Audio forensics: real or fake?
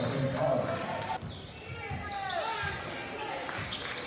real